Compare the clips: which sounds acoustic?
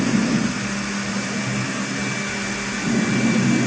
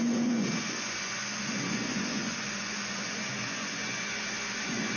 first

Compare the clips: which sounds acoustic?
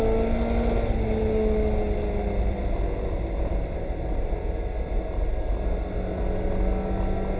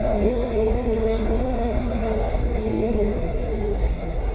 first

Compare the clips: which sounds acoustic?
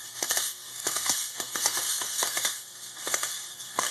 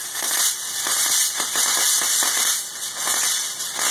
second